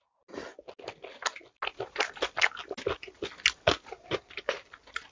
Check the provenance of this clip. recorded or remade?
recorded